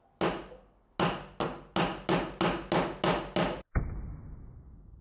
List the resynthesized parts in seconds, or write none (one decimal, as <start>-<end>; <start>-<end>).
none